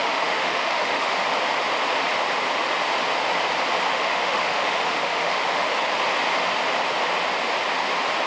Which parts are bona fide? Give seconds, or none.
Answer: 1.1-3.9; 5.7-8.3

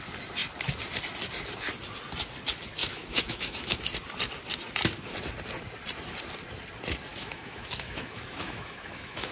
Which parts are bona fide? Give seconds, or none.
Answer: 0.0-2.8; 3.8-7.1

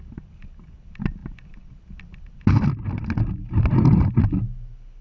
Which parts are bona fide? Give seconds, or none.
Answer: 0.0-5.0